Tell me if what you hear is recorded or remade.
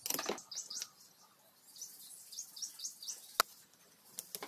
recorded